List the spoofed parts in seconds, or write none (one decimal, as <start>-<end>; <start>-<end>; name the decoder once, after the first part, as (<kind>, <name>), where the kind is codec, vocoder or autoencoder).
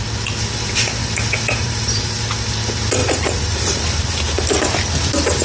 1.0-1.8 (vocoder, BigVGAN v2); 3.0-4.6